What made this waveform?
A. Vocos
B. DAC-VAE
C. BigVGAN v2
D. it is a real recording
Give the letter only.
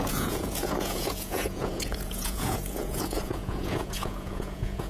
A